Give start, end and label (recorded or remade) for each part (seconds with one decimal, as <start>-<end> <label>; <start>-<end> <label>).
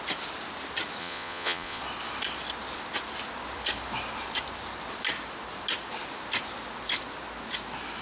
0.0-1.0 recorded; 1.0-1.8 remade; 1.8-8.0 recorded